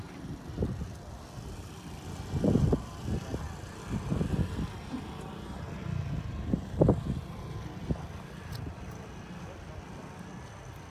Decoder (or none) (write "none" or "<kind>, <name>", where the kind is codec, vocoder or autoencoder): none